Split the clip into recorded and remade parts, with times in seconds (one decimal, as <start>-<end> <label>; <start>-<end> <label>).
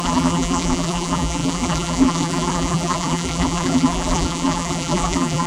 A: 0.0-5.5 remade